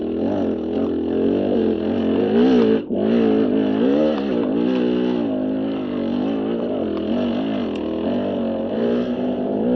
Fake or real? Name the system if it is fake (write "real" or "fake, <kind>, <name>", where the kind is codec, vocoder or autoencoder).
real